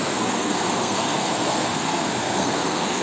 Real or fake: fake